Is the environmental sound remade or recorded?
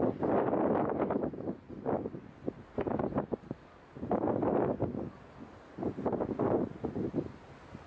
recorded